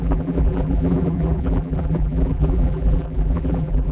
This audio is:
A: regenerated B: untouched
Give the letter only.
A